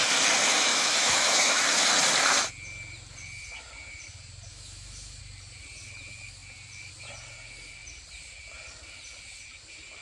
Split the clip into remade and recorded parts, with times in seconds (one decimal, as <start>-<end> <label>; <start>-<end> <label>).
0.0-0.7 recorded; 0.7-1.6 remade; 1.6-4.5 recorded; 4.5-5.2 remade; 5.2-10.0 recorded